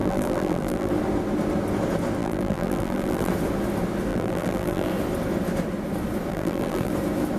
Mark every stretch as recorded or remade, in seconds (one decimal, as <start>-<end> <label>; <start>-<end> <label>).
0.0-0.9 remade; 0.9-2.2 recorded; 2.2-3.3 remade; 3.3-4.1 recorded; 4.1-4.9 remade; 4.9-6.3 recorded; 6.3-6.9 remade; 6.9-7.4 recorded